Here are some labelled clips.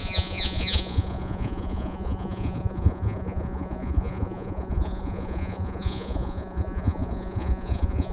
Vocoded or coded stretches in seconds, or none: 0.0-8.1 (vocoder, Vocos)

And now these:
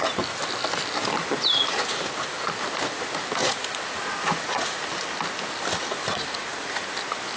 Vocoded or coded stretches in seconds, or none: 3.4-4.8 (vocoder, Vocos); 6.0-6.8

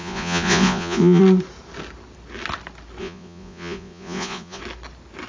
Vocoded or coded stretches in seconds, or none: 0.0-1.2 (vocoder, Vocos); 3.0-4.6

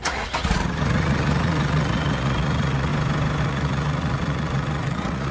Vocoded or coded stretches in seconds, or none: 0.0-2.9 (vocoder, Vocos); 3.4-5.3

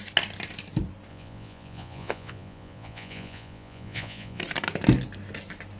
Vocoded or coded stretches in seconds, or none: 1.1-4.4 (vocoder, Vocos)